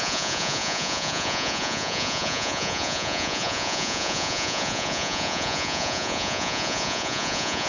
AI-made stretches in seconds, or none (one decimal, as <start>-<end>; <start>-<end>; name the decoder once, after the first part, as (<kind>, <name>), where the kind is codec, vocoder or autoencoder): 0.0-7.7 (vocoder, Vocos)